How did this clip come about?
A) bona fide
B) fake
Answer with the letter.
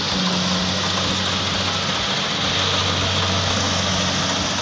A